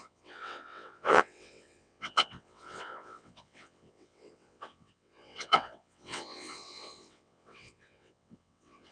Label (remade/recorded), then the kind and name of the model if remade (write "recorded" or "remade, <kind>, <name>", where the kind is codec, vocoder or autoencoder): remade, vocoder, WaveNeXt